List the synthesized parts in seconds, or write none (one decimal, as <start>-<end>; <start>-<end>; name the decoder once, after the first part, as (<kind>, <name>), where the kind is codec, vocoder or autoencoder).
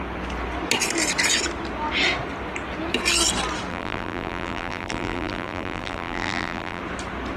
3.7-6.8 (vocoder, BigVGAN v2)